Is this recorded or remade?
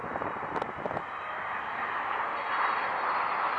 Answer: recorded